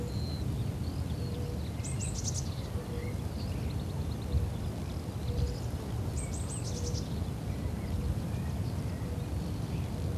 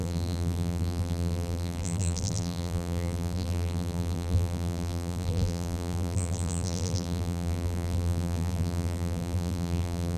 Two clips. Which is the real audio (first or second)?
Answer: first